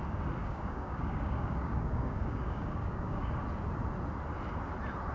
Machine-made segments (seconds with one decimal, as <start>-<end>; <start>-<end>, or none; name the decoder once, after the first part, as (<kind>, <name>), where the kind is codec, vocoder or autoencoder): 0.4-3.3 (codec, DAC)